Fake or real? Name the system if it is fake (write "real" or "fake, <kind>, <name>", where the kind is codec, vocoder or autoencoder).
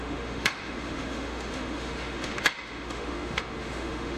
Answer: fake, autoencoder, DAC-VAE